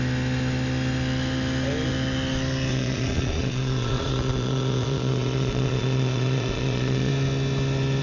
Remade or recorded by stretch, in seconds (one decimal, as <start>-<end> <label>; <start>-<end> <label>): 0.0-2.7 recorded; 2.7-7.1 remade; 7.1-8.0 recorded